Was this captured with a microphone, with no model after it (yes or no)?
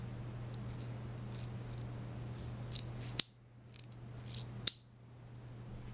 yes